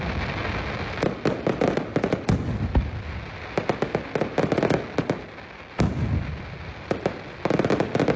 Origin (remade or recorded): recorded